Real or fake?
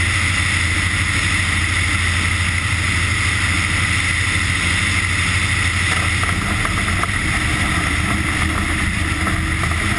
real